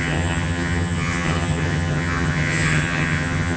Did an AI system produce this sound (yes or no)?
yes